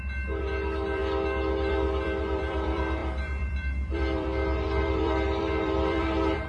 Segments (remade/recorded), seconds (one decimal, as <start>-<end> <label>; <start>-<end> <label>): 0.0-1.0 remade; 1.0-1.7 recorded; 1.7-6.5 remade